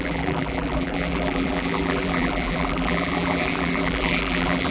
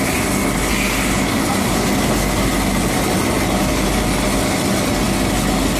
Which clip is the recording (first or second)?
second